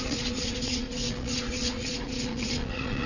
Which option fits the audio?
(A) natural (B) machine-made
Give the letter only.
B